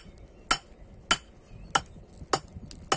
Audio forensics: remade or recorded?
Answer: recorded